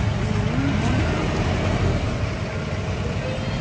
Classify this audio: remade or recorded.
recorded